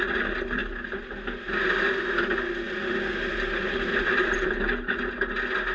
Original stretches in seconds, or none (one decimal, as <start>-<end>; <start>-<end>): 0.0-3.9; 5.1-5.7